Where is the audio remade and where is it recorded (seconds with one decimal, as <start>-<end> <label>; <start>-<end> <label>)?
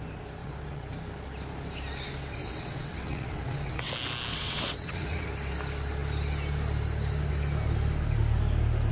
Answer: 0.0-0.4 recorded; 0.4-0.9 remade; 0.9-2.4 recorded; 2.4-3.9 remade; 3.9-4.3 recorded; 4.3-5.3 remade; 5.3-8.9 recorded